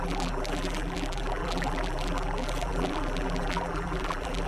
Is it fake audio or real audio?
fake